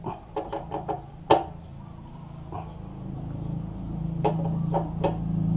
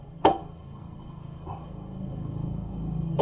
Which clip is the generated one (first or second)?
second